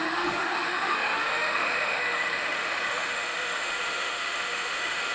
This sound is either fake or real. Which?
fake